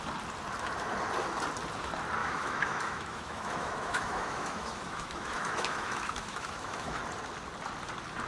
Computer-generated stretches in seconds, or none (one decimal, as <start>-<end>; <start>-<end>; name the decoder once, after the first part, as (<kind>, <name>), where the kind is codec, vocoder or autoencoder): 2.2-7.0 (autoencoder, DAC-VAE)